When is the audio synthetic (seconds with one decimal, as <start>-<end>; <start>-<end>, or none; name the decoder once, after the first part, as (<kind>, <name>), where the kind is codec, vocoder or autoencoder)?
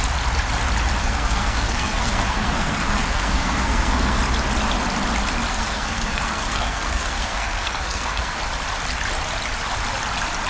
1.0-4.2 (codec, SNAC); 5.5-8.4